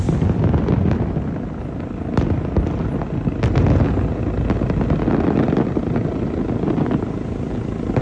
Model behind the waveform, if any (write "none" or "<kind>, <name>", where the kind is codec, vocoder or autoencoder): none